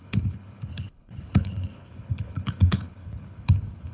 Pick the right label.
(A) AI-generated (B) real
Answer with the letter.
A